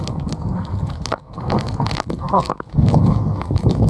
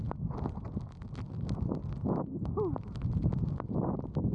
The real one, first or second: second